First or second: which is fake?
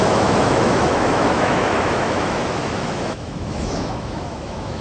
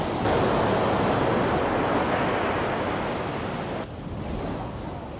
first